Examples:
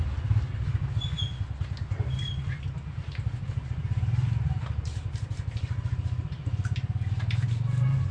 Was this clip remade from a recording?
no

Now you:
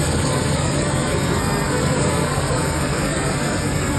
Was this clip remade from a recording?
yes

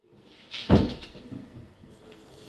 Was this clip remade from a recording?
yes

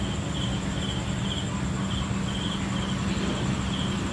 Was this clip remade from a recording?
no